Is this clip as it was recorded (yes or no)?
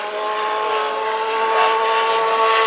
yes